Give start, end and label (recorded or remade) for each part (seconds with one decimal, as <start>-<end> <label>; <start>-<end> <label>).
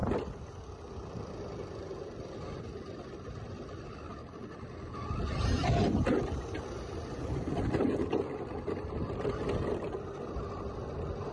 0.0-11.3 recorded